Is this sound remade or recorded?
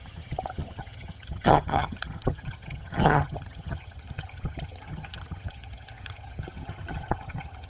remade